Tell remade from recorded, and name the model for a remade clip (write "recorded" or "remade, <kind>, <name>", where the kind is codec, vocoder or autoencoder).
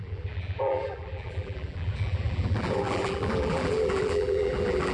remade, vocoder, BigVGAN v2